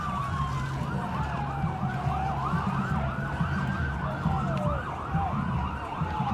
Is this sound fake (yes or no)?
no